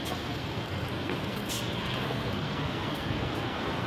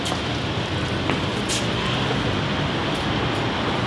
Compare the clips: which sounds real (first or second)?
second